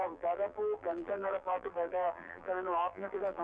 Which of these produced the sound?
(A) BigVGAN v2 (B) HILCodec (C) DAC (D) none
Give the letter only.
A